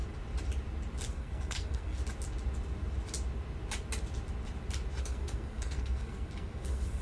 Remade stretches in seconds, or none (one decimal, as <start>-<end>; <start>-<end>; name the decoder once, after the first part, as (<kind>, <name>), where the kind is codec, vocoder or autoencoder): 1.1-2.0 (codec, SNAC); 5.0-7.0